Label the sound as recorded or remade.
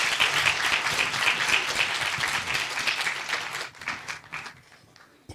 recorded